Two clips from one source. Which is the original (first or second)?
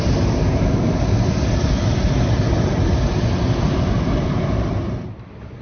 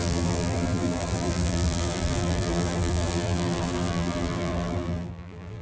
first